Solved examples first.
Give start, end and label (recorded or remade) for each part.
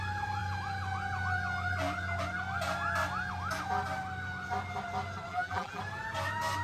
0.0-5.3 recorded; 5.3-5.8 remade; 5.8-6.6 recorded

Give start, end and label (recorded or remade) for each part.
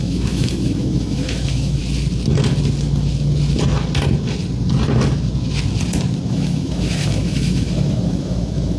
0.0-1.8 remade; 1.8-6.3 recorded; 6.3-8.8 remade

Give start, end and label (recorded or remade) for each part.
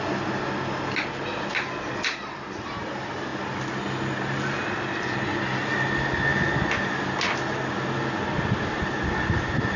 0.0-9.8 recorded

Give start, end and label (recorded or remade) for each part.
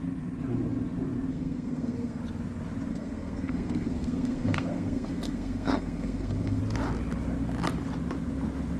0.0-1.3 recorded; 1.3-2.2 remade; 2.2-2.9 recorded; 2.9-6.6 remade; 6.6-8.8 recorded